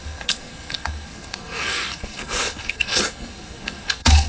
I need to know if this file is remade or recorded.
remade